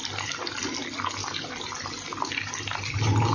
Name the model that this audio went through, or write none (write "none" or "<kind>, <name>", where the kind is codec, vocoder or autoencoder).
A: none